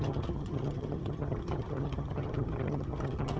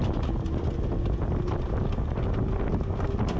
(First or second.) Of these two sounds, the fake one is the first